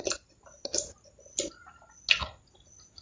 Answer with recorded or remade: recorded